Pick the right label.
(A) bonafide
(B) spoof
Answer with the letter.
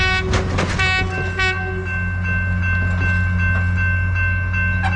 A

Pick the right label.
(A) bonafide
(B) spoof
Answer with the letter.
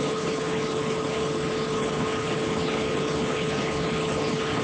B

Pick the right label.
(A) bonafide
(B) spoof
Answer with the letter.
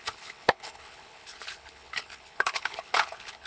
B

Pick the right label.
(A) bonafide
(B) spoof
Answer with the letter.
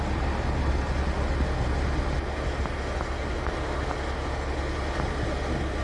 A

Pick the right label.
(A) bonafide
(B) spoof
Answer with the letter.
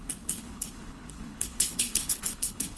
B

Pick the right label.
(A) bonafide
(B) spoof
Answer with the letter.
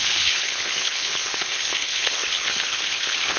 B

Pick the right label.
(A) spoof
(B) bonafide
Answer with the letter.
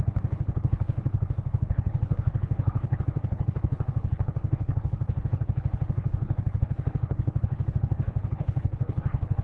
A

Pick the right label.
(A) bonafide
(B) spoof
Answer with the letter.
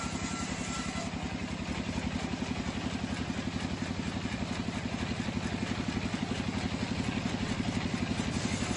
A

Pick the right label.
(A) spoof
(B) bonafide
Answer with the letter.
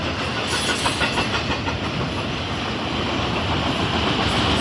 B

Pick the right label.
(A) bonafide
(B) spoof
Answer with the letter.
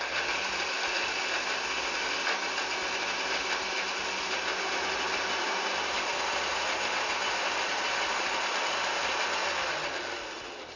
A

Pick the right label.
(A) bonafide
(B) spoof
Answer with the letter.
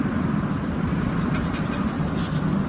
A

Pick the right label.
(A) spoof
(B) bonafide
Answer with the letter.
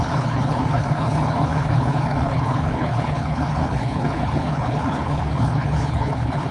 A